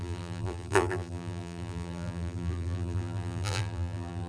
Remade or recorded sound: remade